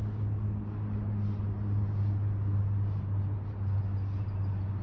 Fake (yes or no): no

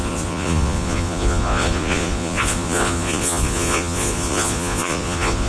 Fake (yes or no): yes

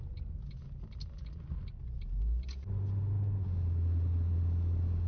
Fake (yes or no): no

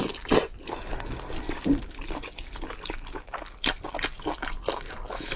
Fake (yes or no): no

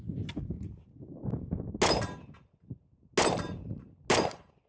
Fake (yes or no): no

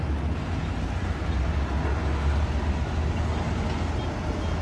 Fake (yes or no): no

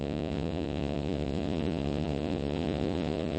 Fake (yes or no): yes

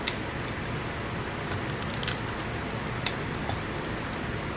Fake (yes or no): no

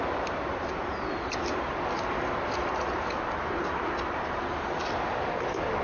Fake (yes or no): no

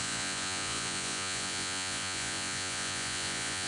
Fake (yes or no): yes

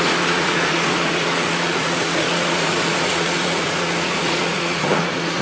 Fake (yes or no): yes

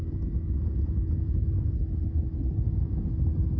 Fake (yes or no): no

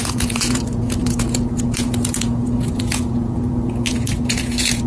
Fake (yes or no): yes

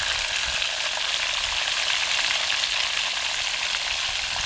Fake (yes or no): no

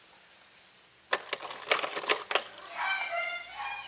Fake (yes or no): no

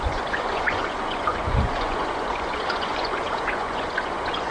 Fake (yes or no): yes